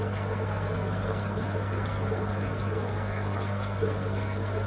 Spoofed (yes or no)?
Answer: yes